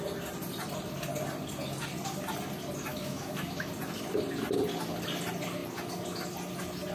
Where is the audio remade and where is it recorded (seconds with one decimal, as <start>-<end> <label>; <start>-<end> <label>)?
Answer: 0.0-2.9 recorded; 2.9-3.7 remade; 3.7-6.9 recorded

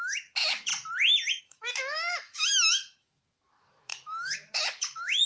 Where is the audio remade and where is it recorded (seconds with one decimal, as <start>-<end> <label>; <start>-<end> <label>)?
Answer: 0.0-0.7 remade; 0.7-1.4 recorded; 1.4-5.3 remade